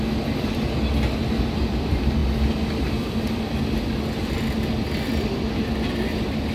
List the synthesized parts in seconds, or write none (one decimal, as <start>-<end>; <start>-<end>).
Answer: none

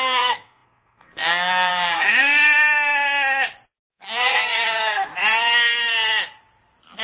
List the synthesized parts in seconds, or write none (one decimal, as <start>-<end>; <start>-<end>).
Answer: 0.0-2.2; 3.9-5.1

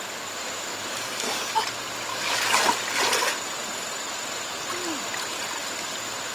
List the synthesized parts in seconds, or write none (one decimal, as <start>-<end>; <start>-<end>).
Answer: 0.7-1.5; 2.1-2.6

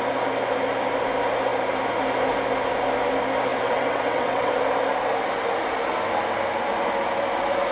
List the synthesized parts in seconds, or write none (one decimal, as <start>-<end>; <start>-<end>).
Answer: 3.5-4.5

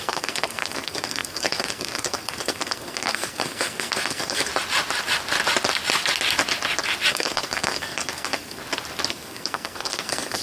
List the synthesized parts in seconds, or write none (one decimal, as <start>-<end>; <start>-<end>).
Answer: 0.0-4.5; 7.1-8.6; 9.1-10.4

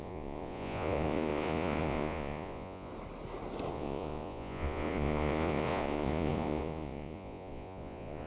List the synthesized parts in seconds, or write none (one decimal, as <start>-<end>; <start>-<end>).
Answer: 0.0-2.9; 3.7-8.3

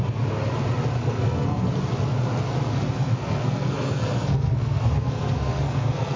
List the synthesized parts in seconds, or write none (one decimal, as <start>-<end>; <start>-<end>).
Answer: 1.0-1.6; 2.7-6.2